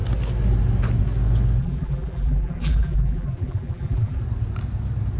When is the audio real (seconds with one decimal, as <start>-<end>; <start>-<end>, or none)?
0.0-1.6; 4.2-5.2